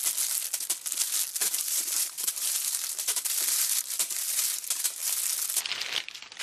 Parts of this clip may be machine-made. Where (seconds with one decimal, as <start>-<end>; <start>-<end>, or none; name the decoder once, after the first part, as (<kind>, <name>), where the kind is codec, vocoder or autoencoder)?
1.4-5.2 (vocoder, BigVGAN v2)